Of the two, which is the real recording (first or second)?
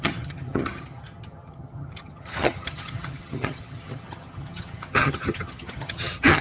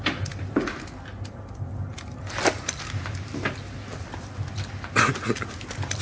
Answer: second